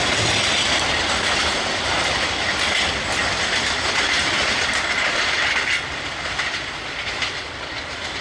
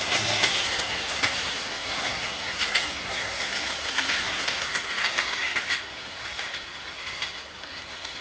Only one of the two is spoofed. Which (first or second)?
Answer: second